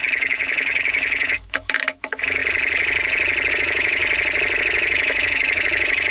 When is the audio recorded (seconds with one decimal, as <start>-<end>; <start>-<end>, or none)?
2.4-3.5; 4.0-4.6